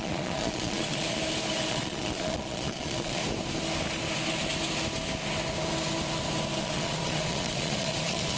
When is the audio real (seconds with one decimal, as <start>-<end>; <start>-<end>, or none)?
1.2-1.7; 3.2-6.6